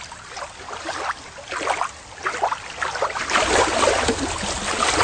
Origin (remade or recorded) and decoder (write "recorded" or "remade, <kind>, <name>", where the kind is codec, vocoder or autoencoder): recorded